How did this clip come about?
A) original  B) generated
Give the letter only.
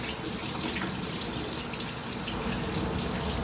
A